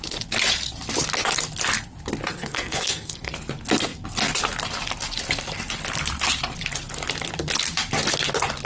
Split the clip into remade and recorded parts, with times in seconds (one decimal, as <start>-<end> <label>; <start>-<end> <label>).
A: 0.0-2.3 recorded; 2.3-3.3 remade; 3.3-8.7 recorded